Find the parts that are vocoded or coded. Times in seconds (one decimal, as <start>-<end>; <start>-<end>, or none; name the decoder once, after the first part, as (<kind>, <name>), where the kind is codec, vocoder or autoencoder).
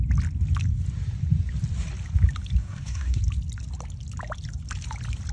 2.6-3.2 (codec, SNAC)